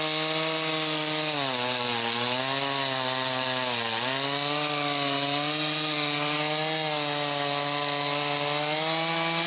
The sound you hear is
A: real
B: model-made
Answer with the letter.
A